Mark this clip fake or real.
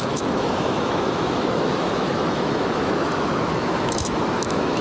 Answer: fake